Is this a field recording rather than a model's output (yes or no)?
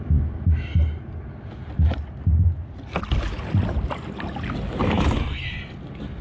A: yes